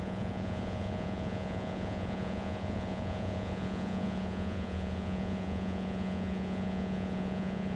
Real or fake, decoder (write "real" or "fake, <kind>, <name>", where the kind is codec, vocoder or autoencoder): fake, vocoder, Vocos